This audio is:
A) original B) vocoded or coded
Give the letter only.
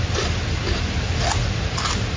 B